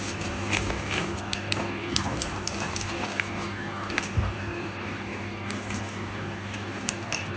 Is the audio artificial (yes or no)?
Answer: yes